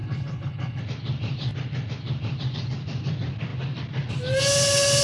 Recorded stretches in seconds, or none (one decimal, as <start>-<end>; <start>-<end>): 0.8-5.0